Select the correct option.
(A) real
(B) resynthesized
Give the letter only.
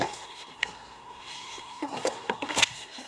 B